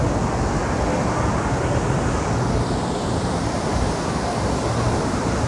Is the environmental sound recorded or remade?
recorded